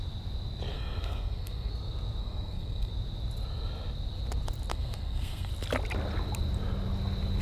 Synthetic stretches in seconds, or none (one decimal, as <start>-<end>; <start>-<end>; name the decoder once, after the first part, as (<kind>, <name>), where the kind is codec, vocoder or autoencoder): 0.7-1.7 (codec, SNAC); 2.2-2.9; 4.7-5.5